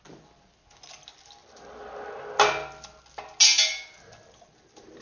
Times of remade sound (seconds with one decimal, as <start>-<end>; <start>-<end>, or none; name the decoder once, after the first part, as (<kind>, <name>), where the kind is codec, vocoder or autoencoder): none